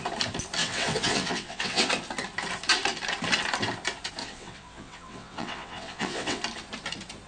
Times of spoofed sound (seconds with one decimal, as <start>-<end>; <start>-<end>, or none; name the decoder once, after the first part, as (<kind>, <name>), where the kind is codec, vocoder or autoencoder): 0.6-1.9 (vocoder, WaveNeXt); 4.2-6.4